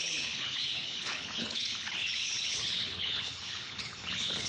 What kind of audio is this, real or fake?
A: fake